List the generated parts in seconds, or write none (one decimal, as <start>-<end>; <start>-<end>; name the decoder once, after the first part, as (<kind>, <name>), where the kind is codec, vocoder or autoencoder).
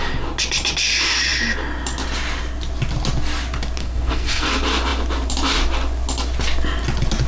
3.8-4.5 (codec, SNAC)